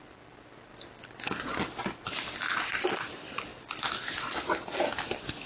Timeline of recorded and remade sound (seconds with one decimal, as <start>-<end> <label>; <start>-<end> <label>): 0.0-5.5 recorded